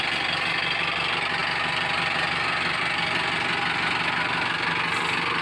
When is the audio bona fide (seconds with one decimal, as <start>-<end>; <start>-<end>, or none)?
0.0-5.4